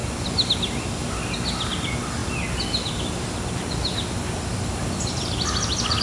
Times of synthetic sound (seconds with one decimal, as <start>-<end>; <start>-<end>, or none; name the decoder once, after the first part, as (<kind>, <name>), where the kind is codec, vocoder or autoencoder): none